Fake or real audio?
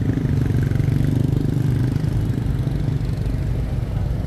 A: real